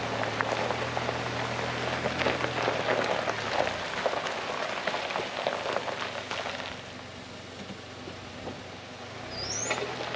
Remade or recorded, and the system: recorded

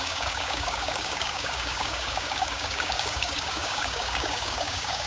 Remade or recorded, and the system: remade, codec, DAC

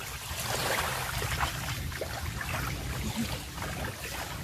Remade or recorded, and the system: recorded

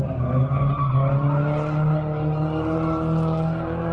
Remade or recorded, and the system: recorded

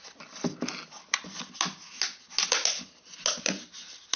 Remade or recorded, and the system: recorded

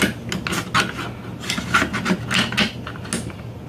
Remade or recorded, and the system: recorded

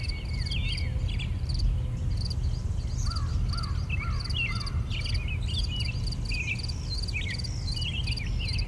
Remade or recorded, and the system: recorded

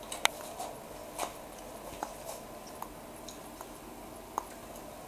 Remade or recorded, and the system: recorded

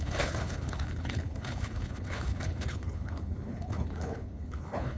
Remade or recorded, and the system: remade, codec, HILCodec